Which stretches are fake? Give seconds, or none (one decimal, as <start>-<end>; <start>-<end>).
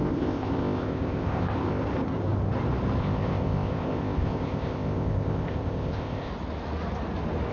0.0-1.8; 3.0-6.3